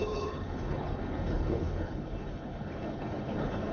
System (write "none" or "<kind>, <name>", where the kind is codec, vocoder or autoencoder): codec, HILCodec